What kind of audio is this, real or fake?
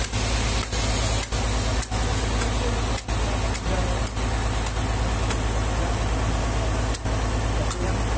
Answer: real